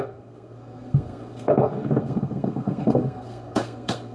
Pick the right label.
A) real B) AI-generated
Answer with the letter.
B